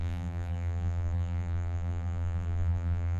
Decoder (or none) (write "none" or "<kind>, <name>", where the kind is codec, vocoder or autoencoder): vocoder, BigVGAN v2